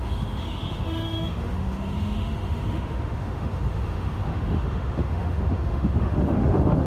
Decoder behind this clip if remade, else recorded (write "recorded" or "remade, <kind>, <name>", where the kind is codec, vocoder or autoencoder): remade, autoencoder, DAC-VAE